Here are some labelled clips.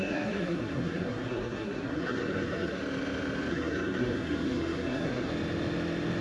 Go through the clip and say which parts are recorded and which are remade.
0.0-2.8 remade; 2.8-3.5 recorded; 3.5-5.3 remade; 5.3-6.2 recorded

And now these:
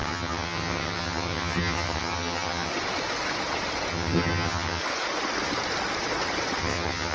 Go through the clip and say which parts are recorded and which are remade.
0.0-2.7 remade; 2.7-3.9 recorded; 3.9-4.8 remade; 4.8-6.6 recorded; 6.6-7.1 remade

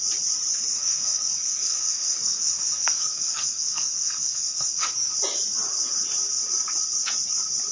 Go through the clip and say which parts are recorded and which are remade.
0.0-0.5 recorded; 0.5-5.1 remade; 5.1-7.7 recorded